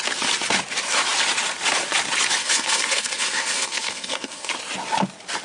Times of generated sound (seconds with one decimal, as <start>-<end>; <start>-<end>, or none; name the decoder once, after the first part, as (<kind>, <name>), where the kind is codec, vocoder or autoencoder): 2.4-4.5 (codec, SNAC)